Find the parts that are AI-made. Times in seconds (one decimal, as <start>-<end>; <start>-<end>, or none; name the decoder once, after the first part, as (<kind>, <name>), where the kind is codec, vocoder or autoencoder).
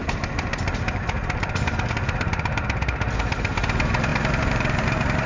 0.0-3.2 (vocoder, BigVGAN v2); 4.1-5.3